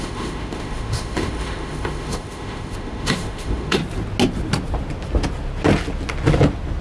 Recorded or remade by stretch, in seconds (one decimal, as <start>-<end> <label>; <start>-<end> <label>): 0.0-3.8 remade; 3.8-6.8 recorded